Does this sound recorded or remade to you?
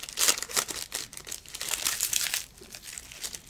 recorded